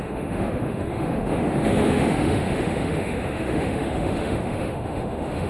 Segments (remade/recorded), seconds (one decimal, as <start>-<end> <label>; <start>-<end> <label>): 0.0-5.5 remade